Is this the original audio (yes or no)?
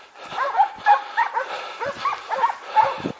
yes